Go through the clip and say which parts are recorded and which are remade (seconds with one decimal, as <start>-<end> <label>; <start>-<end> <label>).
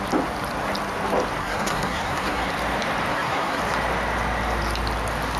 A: 0.0-1.4 recorded; 1.4-2.5 remade; 2.5-3.1 recorded; 3.1-3.6 remade; 3.6-5.4 recorded